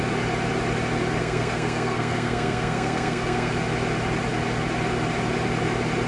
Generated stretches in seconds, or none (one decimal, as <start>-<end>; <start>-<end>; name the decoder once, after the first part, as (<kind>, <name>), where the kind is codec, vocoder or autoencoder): 1.2-3.5 (codec, SNAC)